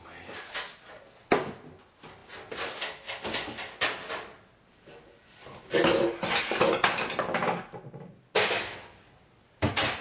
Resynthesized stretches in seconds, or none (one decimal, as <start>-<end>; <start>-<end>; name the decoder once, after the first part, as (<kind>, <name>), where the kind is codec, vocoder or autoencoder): none